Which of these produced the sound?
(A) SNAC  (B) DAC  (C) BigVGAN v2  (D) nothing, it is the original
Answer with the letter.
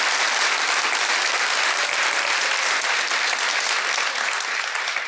D